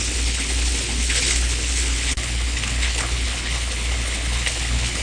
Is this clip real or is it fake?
fake